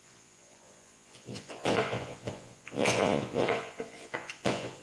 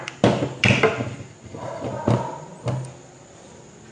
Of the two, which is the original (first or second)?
second